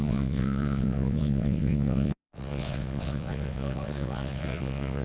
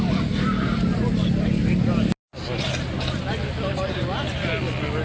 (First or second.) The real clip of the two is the second